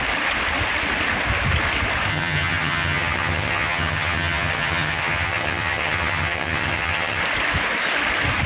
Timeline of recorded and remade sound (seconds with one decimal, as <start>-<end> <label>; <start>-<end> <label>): 0.0-2.1 recorded; 2.1-7.2 remade; 7.2-8.5 recorded